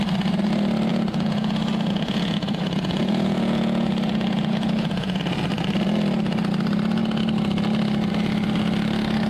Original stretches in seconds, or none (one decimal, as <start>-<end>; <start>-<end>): 0.0-0.9; 5.2-9.3

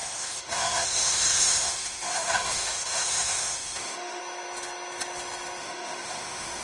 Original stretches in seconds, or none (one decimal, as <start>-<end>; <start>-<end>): 4.2-5.6